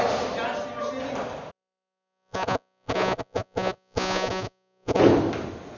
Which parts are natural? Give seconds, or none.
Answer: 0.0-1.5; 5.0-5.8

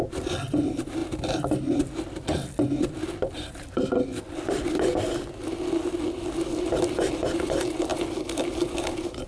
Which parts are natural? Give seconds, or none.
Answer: 0.0-9.3

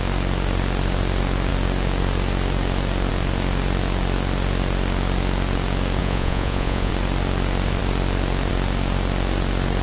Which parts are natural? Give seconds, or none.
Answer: 0.0-6.0; 6.9-9.8

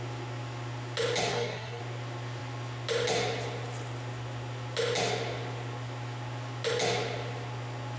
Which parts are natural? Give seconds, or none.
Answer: 0.0-1.3; 1.8-8.0

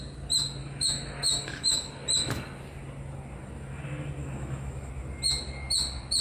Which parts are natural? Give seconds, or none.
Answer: 0.0-0.6; 1.9-4.2; 4.9-6.2

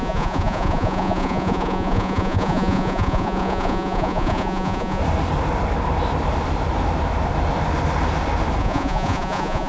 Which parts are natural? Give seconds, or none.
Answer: 5.0-8.6

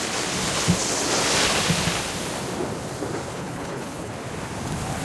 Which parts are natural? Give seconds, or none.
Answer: 0.0-3.3; 4.1-5.0